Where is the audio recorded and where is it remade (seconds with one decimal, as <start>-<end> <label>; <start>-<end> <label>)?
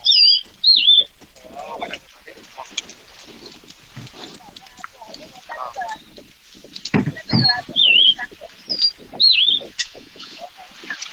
0.0-9.8 recorded; 9.8-10.4 remade; 10.4-11.1 recorded